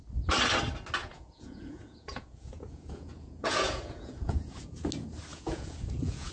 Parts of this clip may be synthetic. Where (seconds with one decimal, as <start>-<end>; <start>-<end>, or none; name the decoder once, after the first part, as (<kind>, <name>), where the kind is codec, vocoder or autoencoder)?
1.0-4.8 (vocoder, Vocos); 5.3-6.3